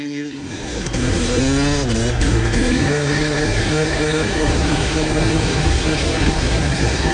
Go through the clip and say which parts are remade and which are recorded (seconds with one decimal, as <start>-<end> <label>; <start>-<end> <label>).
0.0-1.4 remade; 1.4-2.1 recorded; 2.1-7.1 remade